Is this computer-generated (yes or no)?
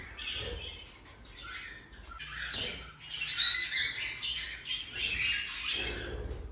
no